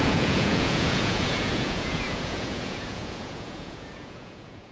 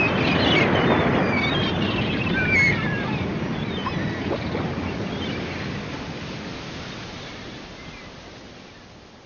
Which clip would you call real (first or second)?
second